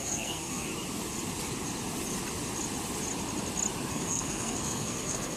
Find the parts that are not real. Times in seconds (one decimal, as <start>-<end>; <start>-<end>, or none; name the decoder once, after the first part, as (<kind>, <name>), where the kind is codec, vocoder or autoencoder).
0.0-0.7 (codec, SNAC); 3.9-5.4